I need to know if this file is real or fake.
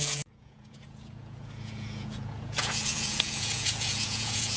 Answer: fake